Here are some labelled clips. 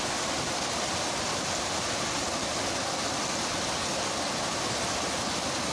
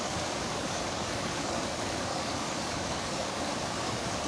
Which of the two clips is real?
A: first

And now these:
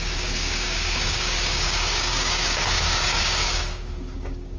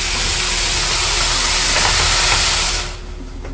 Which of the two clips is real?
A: second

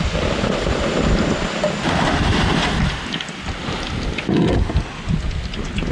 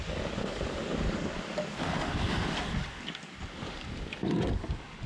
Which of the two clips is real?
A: first